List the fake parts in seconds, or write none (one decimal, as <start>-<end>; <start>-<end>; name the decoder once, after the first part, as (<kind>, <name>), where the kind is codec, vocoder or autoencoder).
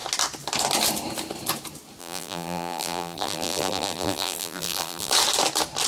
2.0-5.1 (vocoder, BigVGAN v2)